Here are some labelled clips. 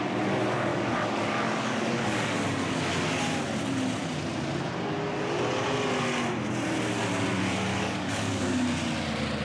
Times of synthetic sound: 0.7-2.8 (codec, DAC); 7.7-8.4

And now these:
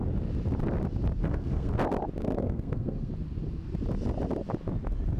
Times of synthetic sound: 1.2-1.7 (codec, SNAC); 2.2-3.1

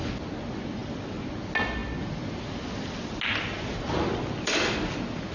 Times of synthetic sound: none

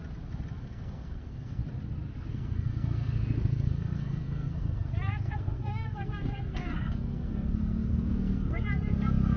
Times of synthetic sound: 0.6-1.6 (codec, SNAC); 2.3-9.4

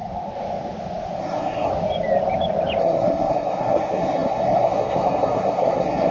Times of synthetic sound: 1.2-1.7 (codec, SNAC); 2.8-6.1

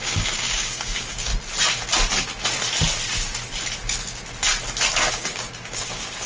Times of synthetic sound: 0.0-1.3 (codec, DAC); 5.1-6.3